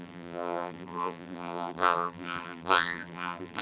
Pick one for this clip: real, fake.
fake